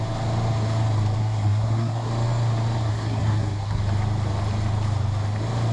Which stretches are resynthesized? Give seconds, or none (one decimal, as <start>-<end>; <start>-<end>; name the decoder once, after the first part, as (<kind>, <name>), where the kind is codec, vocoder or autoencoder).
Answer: 1.2-2.1 (codec, SNAC); 2.9-3.8

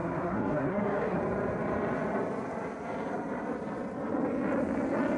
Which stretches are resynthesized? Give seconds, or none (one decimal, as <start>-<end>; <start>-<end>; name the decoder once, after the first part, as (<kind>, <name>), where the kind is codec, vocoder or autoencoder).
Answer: 0.0-1.2 (codec, SNAC)

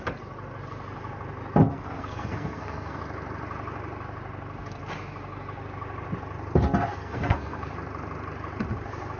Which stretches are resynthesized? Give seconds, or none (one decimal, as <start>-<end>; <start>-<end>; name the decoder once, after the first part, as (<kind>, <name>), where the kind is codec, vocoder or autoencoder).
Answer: 1.7-3.0 (codec, SNAC); 6.9-7.7